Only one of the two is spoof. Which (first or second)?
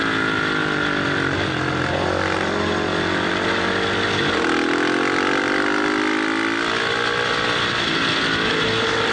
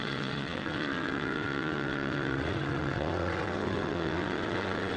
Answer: second